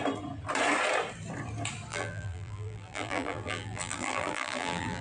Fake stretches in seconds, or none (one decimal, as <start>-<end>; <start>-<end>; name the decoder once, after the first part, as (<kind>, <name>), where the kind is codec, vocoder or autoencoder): 1.9-5.0 (vocoder, BigVGAN v2)